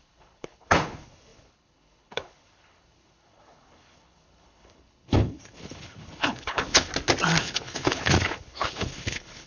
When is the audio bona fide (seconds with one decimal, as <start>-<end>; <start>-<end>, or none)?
6.9-7.4